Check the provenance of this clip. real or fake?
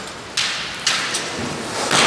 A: real